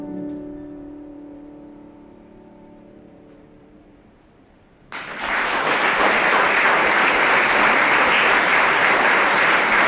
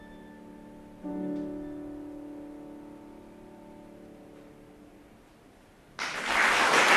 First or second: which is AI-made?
first